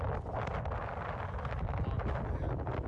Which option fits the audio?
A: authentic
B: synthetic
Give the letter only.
A